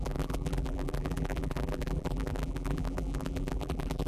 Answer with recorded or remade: remade